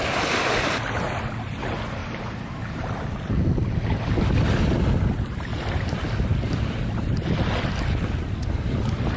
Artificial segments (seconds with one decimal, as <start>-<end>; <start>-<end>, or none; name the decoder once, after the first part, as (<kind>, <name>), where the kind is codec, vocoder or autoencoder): 2.0-3.1 (vocoder, BigVGAN v2)